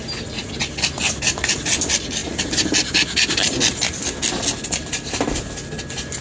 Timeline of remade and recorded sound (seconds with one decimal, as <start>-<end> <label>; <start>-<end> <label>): 0.0-6.2 recorded